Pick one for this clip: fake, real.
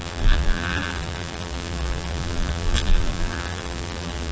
fake